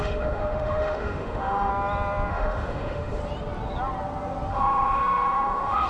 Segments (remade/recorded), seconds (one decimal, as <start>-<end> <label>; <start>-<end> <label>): 0.0-1.7 remade; 1.7-2.3 recorded; 2.3-3.2 remade; 3.2-4.5 recorded; 4.5-5.9 remade